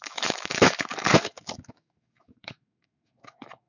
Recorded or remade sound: remade